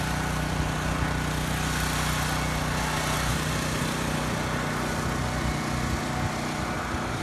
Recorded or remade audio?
recorded